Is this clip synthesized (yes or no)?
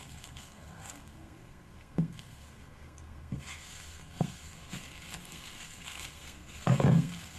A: yes